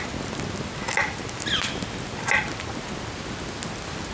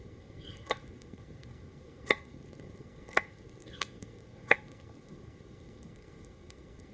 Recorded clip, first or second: first